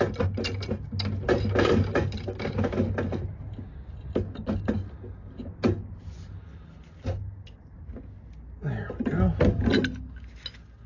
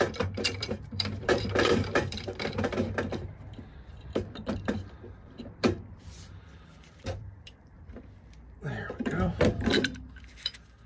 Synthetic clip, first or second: second